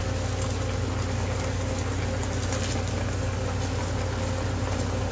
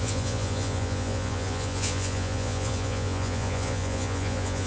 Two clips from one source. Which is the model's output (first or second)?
second